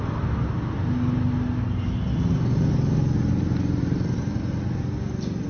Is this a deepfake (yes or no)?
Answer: no